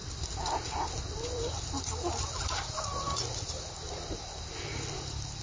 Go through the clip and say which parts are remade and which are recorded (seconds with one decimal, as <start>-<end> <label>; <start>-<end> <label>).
0.0-5.4 recorded